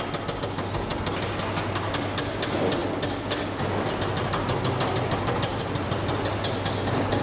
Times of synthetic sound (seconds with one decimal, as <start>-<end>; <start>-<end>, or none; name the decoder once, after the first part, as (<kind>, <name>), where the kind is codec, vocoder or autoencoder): 2.8-3.6 (vocoder, BigVGAN v2); 5.5-6.1